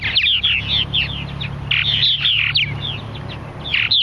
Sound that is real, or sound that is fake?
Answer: real